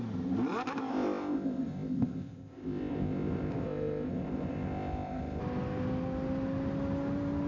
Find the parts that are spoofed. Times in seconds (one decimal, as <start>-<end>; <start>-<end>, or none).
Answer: 0.9-5.4